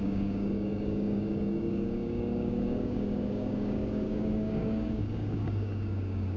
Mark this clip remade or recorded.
remade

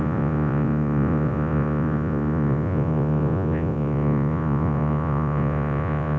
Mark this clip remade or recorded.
remade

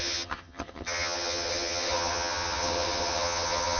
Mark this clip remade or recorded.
remade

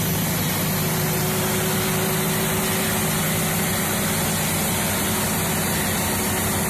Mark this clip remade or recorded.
recorded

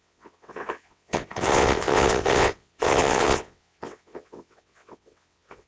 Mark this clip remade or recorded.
remade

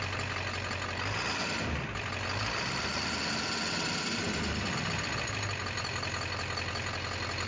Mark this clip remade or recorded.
recorded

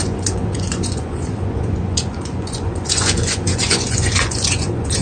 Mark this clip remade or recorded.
remade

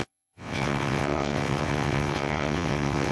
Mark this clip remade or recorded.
remade